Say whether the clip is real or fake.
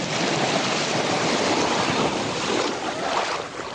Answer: real